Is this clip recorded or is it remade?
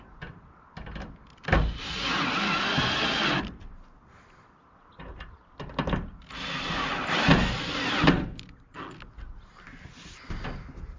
recorded